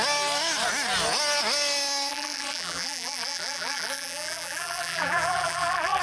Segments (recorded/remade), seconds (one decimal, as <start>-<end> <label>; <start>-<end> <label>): 0.0-2.1 recorded; 2.1-6.0 remade

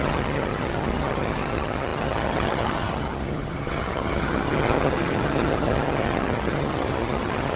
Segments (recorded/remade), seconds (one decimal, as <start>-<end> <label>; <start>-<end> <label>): 0.0-7.6 remade

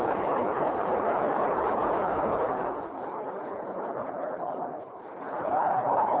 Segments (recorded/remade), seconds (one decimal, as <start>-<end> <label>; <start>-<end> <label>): 0.0-6.2 remade

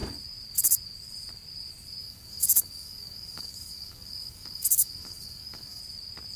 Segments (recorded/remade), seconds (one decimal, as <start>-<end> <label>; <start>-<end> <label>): 0.0-2.0 recorded; 2.0-5.8 remade; 5.8-6.4 recorded